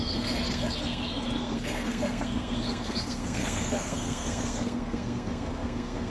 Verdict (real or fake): fake